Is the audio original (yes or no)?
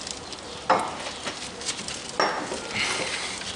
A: yes